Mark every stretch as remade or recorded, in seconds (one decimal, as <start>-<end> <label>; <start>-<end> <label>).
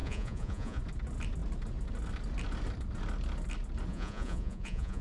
0.0-0.8 remade; 0.8-3.9 recorded; 3.9-5.0 remade